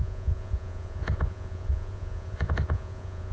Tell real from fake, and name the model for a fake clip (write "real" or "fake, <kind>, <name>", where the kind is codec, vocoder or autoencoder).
fake, vocoder, Vocos